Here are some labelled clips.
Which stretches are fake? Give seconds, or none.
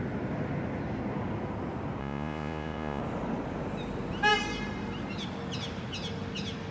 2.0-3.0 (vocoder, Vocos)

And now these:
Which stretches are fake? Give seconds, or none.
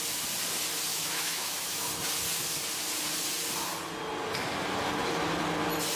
0.9-1.9 (autoencoder, DAC-VAE)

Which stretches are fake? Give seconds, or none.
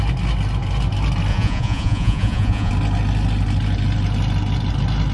1.3-2.7 (vocoder, Vocos)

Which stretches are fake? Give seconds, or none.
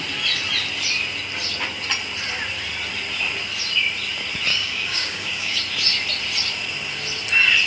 4.5-5.6 (codec, DAC)